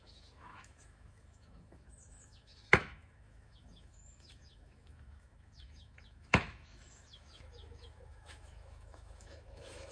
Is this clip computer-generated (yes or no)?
yes